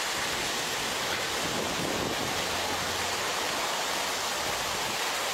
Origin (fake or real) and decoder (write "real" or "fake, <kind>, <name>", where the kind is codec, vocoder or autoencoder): real